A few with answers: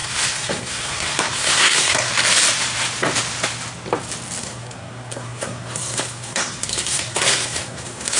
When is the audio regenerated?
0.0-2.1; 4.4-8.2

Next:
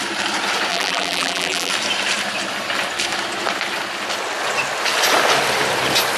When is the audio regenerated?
0.7-1.7

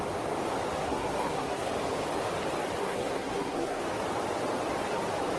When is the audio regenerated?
0.8-1.7; 2.8-3.8

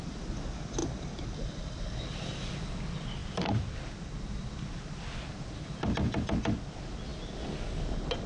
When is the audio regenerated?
0.8-1.8; 3.2-3.8

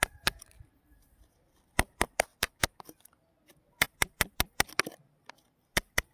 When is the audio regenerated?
none